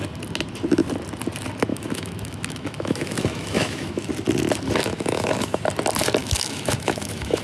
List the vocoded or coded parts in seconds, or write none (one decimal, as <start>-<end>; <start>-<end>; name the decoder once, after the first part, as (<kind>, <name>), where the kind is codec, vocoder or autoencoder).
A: 1.7-4.1 (autoencoder, DAC-VAE); 4.8-5.6; 6.2-7.4